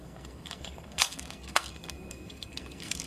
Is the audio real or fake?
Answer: fake